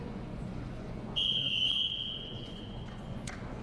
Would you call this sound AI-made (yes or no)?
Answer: yes